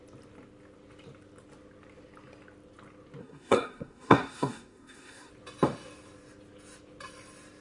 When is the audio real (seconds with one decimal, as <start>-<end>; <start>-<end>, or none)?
0.0-3.2; 5.3-7.6